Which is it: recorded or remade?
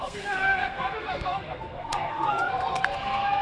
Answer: remade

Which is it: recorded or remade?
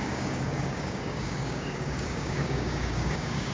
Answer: remade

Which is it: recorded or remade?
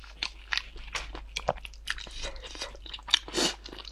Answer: recorded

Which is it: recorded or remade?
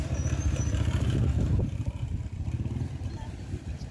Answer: recorded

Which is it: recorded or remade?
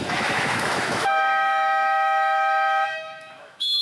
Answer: remade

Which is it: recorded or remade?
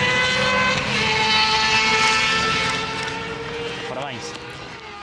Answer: recorded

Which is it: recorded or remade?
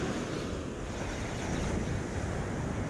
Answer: recorded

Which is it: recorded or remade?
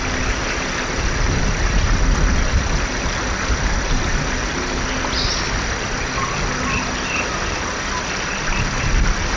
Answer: recorded